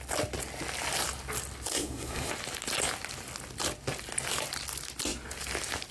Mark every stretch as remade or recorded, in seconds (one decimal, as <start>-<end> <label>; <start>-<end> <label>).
0.0-1.7 recorded; 1.7-2.3 remade; 2.3-5.9 recorded